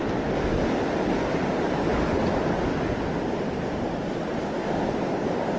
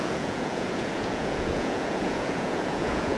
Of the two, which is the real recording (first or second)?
first